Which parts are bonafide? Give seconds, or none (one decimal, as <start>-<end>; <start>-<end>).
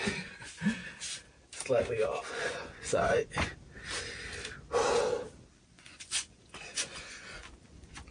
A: 0.8-2.3; 3.5-5.7